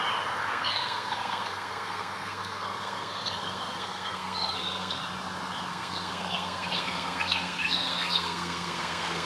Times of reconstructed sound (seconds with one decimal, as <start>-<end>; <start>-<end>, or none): 0.4-5.0; 5.7-9.3